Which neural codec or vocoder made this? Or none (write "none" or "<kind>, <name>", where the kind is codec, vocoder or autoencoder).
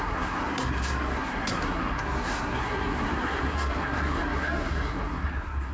codec, SNAC